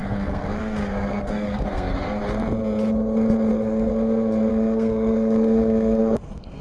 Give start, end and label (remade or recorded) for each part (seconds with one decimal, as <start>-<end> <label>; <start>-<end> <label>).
0.0-2.2 remade; 2.2-3.5 recorded; 3.5-3.9 remade; 3.9-4.5 recorded; 4.5-6.6 remade